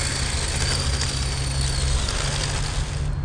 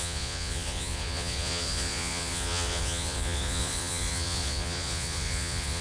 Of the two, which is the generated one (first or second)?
second